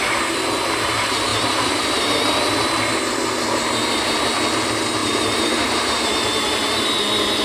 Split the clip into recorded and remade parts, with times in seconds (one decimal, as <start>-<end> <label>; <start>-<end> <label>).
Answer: 0.0-1.3 recorded; 1.3-2.2 remade; 2.2-5.0 recorded; 5.0-7.0 remade; 7.0-7.4 recorded